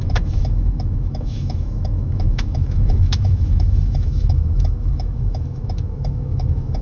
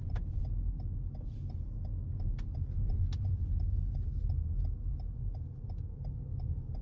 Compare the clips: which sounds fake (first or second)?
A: first